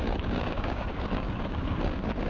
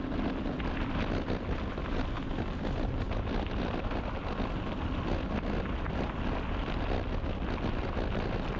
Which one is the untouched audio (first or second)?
second